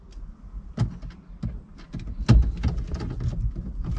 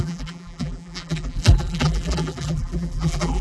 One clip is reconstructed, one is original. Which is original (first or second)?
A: first